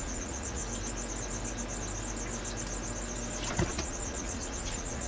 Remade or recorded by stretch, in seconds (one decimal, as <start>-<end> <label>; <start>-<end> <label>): 0.0-0.6 remade; 0.6-3.5 recorded; 3.5-5.1 remade